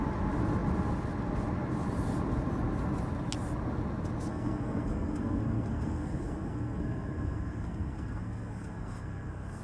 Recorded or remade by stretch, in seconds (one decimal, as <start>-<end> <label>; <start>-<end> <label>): 0.0-4.3 recorded; 4.3-9.6 remade